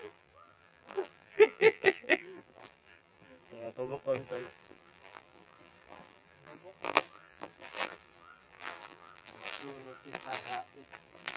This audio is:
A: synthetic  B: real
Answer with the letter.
A